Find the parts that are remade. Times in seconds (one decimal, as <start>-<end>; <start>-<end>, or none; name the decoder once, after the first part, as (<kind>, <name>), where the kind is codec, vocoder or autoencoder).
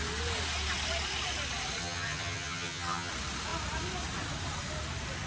1.8-3.1 (vocoder, HiFi-GAN)